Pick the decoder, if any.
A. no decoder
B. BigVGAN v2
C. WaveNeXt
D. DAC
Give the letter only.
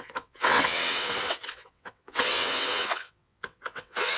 C